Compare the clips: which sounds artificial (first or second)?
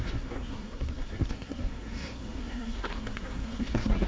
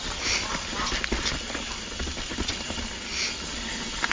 first